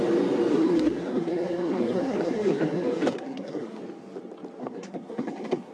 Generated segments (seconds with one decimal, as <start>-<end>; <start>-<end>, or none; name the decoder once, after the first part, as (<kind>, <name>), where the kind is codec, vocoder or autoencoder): 0.5-3.8 (codec, SNAC); 4.6-5.7